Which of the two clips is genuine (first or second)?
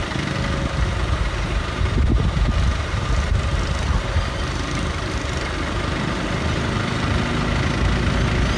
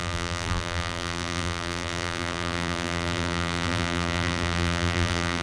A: first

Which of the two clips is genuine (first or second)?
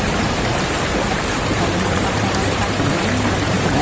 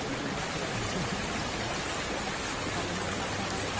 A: second